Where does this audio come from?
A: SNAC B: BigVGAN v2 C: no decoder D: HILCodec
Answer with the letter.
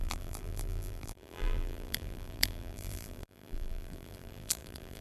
B